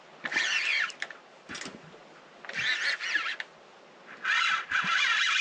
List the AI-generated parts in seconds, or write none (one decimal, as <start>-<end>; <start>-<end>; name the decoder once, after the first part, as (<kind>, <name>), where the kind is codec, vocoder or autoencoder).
none